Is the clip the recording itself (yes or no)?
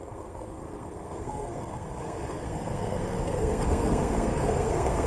no